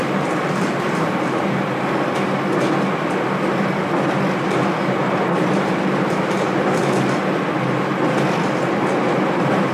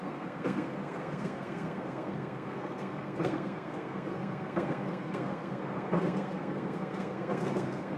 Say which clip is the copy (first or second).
second